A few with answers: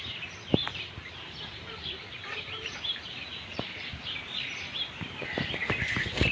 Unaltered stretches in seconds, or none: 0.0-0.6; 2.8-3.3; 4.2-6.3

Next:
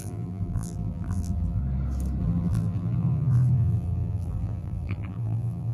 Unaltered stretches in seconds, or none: 1.6-2.2

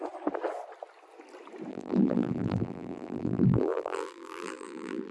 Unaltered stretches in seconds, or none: 0.0-1.7